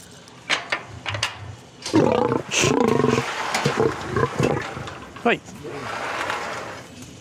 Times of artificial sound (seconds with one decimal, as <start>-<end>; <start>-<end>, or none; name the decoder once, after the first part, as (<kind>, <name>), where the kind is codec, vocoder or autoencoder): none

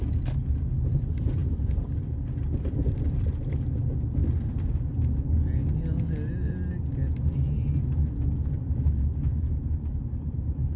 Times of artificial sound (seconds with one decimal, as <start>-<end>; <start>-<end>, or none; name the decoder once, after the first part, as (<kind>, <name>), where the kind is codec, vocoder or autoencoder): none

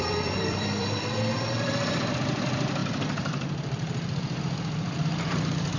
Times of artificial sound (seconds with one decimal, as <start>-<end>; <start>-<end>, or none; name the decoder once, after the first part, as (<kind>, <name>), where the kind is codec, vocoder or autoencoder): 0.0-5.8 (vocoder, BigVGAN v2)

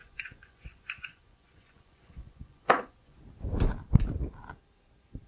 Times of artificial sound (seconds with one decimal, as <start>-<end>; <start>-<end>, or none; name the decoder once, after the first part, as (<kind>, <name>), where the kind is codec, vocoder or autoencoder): 0.0-3.2 (vocoder, Vocos)

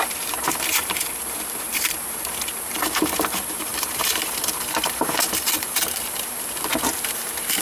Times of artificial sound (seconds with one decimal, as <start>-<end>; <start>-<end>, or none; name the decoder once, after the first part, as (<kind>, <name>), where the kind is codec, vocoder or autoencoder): 0.0-7.6 (vocoder, BigVGAN v2)

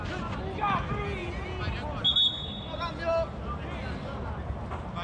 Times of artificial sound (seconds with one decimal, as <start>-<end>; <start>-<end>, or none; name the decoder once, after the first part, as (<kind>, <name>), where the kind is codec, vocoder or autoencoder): none